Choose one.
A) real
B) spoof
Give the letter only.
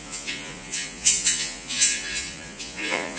B